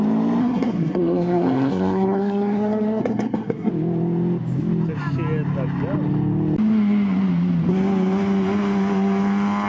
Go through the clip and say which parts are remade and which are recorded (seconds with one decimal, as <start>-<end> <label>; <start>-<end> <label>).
0.0-0.4 recorded; 0.4-3.7 remade; 3.7-9.7 recorded